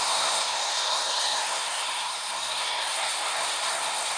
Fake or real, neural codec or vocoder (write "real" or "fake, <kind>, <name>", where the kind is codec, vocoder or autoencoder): fake, codec, SNAC